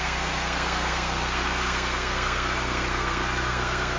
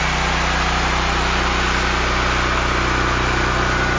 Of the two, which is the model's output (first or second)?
first